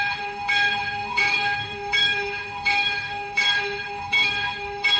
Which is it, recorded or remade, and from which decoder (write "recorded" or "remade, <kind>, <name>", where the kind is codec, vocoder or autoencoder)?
remade, autoencoder, DAC-VAE